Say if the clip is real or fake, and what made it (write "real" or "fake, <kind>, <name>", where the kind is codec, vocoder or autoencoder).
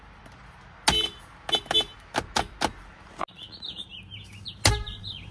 real